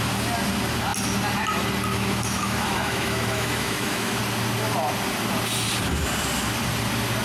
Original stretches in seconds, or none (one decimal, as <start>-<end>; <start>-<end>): 0.0-1.9; 4.2-7.2